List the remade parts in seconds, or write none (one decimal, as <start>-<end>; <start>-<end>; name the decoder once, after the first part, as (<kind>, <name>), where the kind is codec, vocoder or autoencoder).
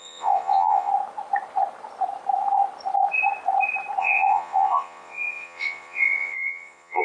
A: 0.0-0.9 (vocoder, Vocos); 4.0-7.0